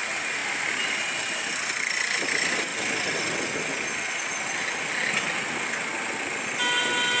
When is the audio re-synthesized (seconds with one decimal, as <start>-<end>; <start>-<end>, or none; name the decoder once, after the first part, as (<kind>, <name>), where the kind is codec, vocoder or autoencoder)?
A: none